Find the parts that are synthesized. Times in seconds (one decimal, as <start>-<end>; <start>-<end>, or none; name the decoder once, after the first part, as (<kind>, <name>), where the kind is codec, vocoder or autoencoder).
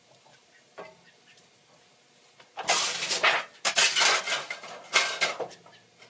none